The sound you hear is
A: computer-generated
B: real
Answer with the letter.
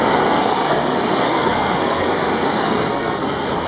A